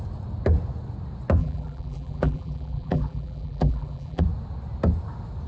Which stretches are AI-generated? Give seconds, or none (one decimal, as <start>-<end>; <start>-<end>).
1.4-4.2